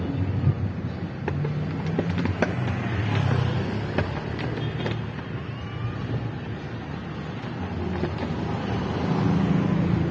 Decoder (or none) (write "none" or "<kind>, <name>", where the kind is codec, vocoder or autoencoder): none